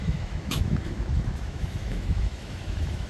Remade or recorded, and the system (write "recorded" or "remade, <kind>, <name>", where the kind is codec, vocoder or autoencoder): remade, autoencoder, DAC-VAE